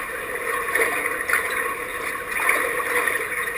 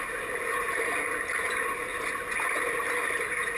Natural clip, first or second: second